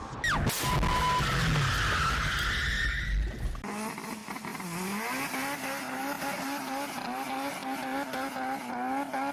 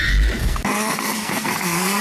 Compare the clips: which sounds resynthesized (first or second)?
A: second